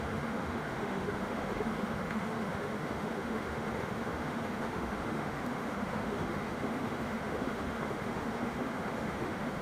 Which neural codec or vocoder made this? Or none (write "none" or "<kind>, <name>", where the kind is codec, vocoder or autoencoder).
autoencoder, DAC-VAE